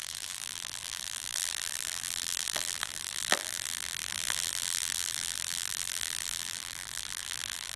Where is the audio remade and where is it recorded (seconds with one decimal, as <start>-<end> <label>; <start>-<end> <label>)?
0.0-7.8 remade